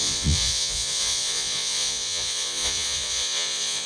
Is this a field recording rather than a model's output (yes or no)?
no